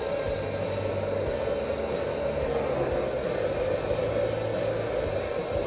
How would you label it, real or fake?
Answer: real